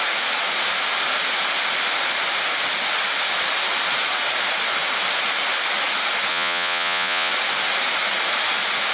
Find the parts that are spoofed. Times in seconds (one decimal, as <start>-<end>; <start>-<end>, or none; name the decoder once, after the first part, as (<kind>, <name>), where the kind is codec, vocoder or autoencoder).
6.3-7.3 (vocoder, Vocos)

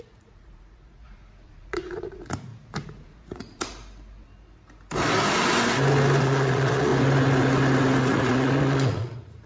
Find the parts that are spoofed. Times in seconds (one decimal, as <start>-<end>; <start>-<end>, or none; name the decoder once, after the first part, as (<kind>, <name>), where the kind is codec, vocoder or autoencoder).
0.0-2.5 (vocoder, Vocos); 3.0-3.7; 6.2-6.9; 8.0-9.5